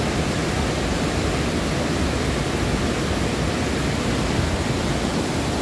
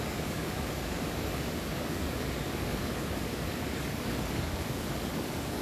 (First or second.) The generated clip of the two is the second